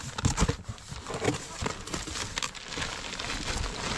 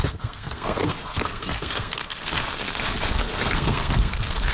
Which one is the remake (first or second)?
second